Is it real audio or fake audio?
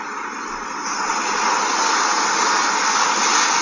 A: real